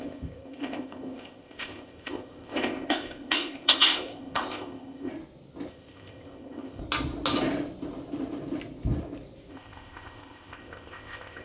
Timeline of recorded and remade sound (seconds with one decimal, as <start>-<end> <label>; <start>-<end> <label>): 0.0-5.1 remade; 5.1-5.7 recorded; 5.7-6.8 remade; 6.8-9.5 recorded; 9.5-11.4 remade